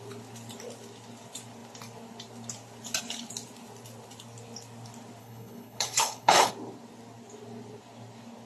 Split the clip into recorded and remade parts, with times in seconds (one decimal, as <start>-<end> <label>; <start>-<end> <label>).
0.0-5.2 recorded; 5.2-6.5 remade; 6.5-8.5 recorded